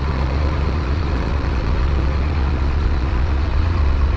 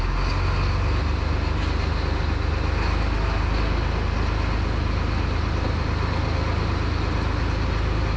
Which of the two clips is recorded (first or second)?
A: second